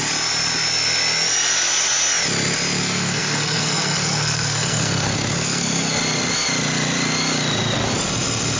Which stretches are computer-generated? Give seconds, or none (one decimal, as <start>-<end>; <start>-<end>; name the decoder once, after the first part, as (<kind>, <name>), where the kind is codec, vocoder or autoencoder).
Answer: 2.8-6.0 (codec, SNAC)